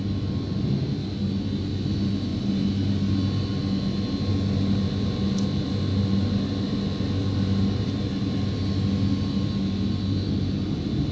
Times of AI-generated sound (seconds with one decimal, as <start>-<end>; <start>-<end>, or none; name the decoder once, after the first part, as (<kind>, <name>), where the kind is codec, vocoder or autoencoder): none